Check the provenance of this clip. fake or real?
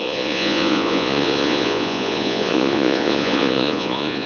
fake